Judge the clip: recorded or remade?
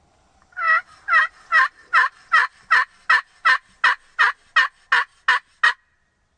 recorded